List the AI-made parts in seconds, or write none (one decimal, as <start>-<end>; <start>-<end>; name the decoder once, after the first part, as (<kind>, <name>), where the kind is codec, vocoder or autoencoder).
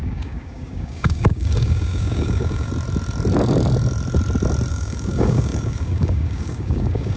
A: 0.0-2.7 (codec, DAC); 4.7-7.2